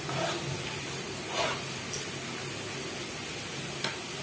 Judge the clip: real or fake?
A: real